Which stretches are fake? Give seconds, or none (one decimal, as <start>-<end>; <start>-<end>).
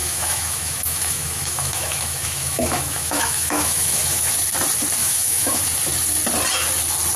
0.0-4.3; 5.0-5.6